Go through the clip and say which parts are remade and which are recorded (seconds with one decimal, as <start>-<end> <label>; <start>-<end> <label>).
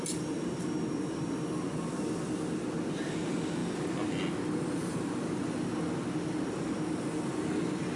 0.0-8.0 recorded